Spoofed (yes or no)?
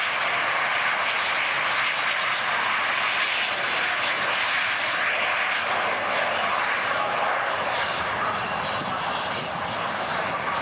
no